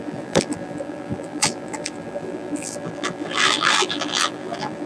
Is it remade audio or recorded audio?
remade